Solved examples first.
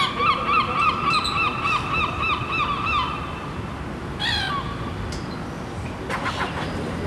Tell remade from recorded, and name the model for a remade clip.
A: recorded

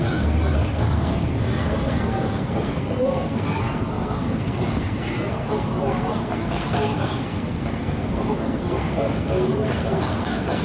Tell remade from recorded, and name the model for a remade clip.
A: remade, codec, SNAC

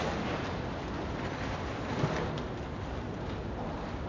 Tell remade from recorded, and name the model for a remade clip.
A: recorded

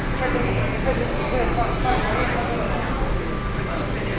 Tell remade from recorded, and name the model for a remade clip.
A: recorded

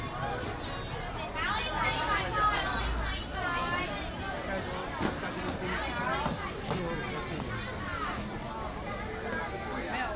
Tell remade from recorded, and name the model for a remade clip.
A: recorded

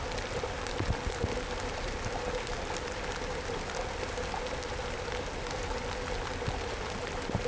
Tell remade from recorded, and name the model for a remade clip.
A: recorded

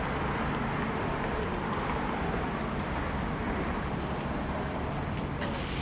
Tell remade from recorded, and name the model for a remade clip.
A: recorded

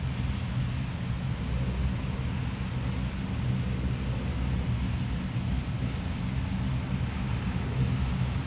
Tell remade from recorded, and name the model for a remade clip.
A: recorded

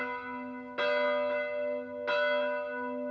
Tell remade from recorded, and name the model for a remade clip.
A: recorded